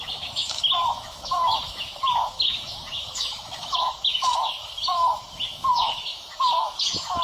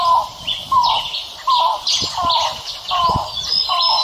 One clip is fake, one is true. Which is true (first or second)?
second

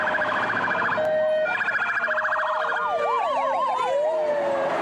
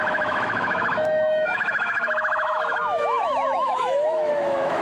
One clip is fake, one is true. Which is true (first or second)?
first